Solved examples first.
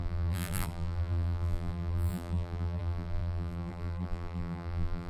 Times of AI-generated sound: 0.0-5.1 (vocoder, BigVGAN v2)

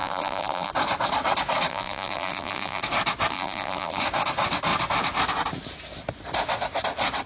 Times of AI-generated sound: 0.0-0.7 (vocoder, BigVGAN v2); 1.7-2.8; 3.3-4.0